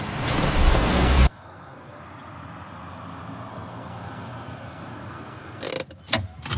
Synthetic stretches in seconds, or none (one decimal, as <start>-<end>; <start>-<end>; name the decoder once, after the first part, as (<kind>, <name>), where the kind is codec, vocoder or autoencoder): 0.7-2.0 (codec, SNAC); 3.5-5.7